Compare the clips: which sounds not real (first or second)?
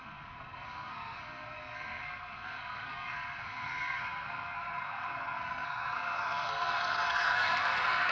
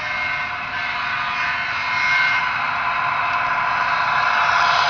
first